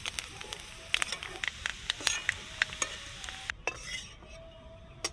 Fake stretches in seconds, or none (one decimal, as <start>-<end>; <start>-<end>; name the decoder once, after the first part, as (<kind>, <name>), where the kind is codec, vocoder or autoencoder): none